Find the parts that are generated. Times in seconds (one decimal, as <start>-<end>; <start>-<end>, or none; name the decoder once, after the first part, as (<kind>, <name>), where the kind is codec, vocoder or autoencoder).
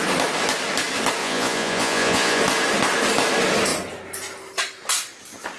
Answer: 1.2-2.4 (vocoder, Vocos)